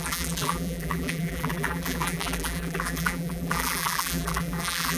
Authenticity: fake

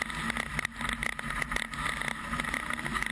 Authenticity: real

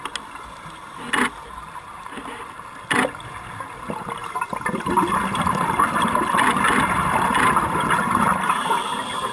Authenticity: real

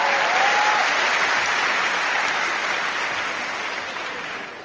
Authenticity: real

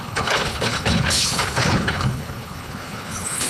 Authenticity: fake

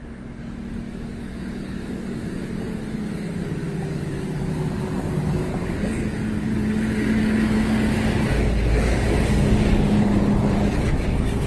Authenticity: fake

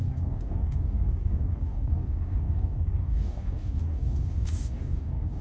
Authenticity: fake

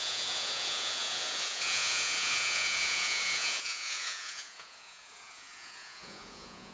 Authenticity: fake